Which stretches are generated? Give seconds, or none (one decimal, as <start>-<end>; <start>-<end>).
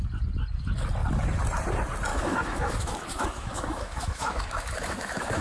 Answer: 2.1-5.4